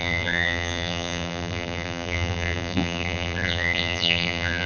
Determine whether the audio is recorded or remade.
remade